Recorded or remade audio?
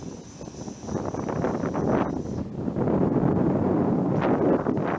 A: recorded